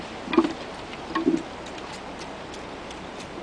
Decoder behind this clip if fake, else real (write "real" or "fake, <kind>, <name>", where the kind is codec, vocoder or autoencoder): real